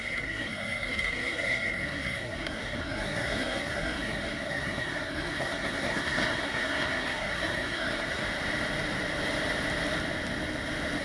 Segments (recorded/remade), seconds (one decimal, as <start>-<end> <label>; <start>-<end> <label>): 0.0-8.2 remade; 8.2-11.0 recorded